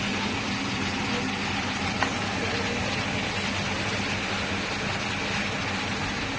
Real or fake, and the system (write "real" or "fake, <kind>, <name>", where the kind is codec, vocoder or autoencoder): real